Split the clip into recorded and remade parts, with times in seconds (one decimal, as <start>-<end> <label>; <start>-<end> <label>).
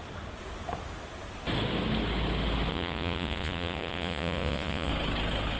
0.0-2.7 recorded; 2.7-4.9 remade; 4.9-5.6 recorded